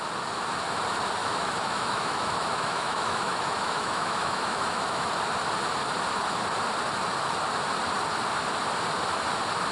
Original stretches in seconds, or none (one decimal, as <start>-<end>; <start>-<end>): 0.0-1.2; 5.1-9.7